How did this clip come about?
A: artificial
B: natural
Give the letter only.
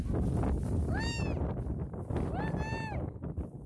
B